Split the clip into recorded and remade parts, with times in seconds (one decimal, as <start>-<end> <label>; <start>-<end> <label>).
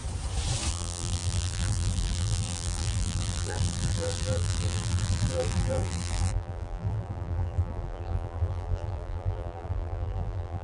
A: 0.0-0.7 recorded; 0.7-10.6 remade